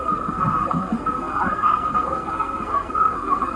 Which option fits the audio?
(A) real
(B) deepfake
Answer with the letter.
B